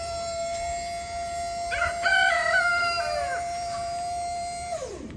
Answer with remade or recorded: remade